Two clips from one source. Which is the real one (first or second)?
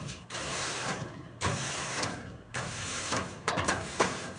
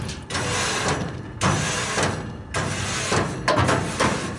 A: second